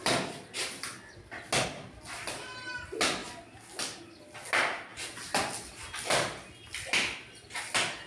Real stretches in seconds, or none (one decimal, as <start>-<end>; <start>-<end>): 0.0-8.1